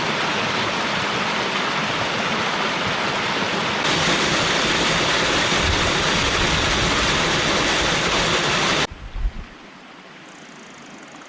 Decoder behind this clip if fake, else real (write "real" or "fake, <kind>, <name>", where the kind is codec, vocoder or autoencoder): real